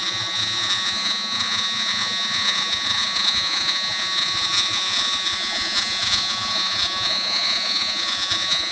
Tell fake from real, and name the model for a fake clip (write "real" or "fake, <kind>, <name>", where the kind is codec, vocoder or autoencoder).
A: fake, vocoder, Vocos